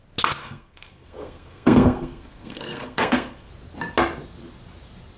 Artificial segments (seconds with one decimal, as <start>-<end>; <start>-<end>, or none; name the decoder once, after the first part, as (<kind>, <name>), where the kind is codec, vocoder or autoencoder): 0.4-3.5 (codec, SNAC)